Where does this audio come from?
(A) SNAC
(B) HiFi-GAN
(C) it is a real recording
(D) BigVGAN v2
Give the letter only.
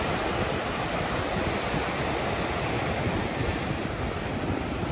C